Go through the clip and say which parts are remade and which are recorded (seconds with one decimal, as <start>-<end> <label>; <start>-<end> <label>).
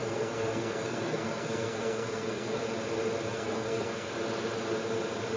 0.0-2.6 remade; 2.6-3.3 recorded; 3.3-4.1 remade; 4.1-5.4 recorded